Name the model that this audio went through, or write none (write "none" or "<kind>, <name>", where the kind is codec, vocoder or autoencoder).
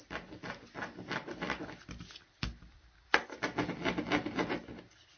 none